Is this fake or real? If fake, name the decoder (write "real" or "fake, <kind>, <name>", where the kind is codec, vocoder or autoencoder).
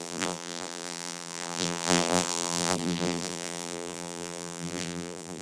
fake, vocoder, BigVGAN v2